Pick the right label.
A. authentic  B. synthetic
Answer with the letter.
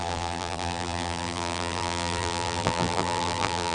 B